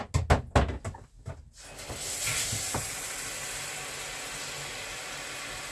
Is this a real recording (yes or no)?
yes